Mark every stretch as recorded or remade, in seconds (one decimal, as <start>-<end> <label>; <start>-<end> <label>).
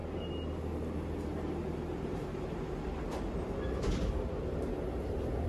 0.0-1.3 recorded; 1.3-4.1 remade; 4.1-5.5 recorded